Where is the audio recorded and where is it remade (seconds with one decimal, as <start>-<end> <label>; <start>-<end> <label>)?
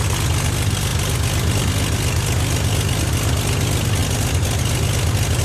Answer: 0.0-5.4 recorded